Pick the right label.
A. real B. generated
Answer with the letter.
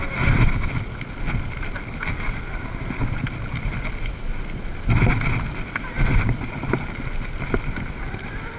A